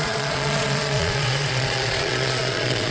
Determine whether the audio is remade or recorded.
remade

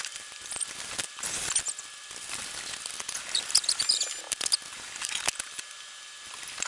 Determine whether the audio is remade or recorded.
recorded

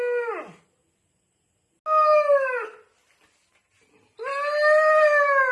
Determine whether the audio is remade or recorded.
recorded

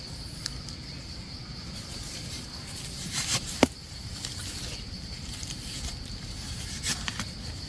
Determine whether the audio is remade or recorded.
remade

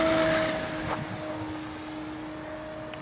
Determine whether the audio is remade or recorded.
recorded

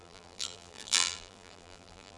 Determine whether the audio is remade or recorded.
remade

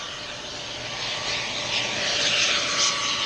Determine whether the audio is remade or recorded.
recorded